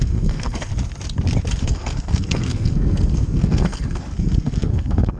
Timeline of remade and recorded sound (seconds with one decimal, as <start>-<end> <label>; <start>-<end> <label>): 0.0-0.7 remade; 0.7-1.6 recorded; 1.6-5.2 remade